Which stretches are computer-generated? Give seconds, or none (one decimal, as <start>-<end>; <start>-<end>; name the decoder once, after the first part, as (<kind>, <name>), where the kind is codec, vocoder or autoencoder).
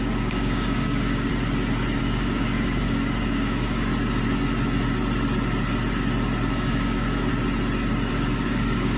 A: 0.0-1.3 (codec, DAC); 2.0-3.9; 6.5-7.3; 8.1-9.0